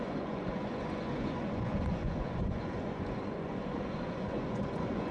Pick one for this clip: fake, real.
fake